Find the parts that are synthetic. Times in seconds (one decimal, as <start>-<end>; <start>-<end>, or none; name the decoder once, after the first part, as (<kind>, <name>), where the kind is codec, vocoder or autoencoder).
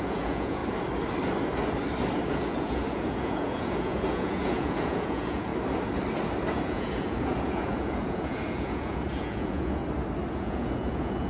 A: 0.0-0.6 (vocoder, Vocos); 2.3-5.5; 6.5-9.8; 10.3-11.3